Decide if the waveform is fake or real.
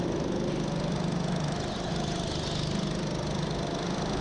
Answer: real